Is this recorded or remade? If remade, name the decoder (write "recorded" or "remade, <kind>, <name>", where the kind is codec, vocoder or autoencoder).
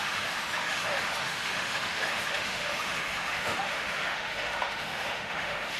remade, autoencoder, DAC-VAE